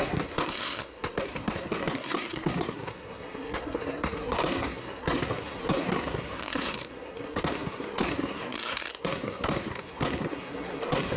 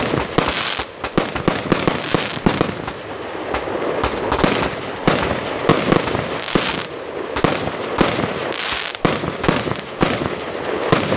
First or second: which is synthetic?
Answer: first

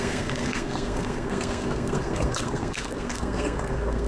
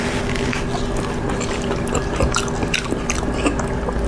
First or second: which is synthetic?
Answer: first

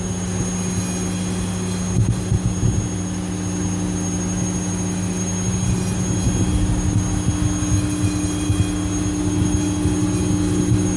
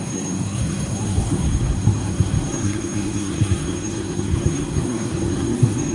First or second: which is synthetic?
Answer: second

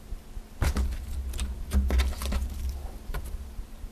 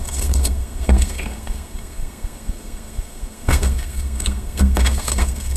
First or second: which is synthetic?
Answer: second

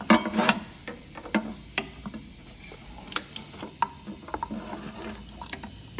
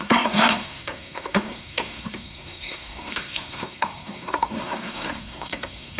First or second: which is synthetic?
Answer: second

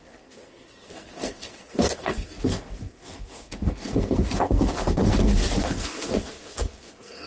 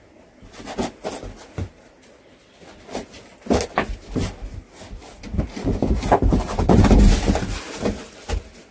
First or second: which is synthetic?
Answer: first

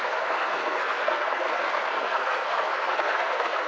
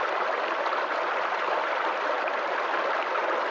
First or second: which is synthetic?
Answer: first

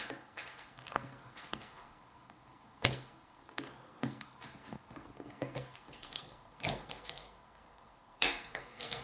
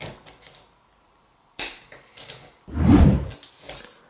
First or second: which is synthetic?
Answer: first